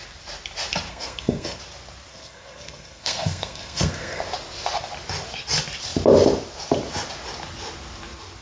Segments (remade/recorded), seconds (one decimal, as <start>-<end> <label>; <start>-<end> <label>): 0.0-0.9 recorded; 0.9-1.6 remade; 1.6-2.1 recorded; 2.1-4.2 remade; 4.2-8.4 recorded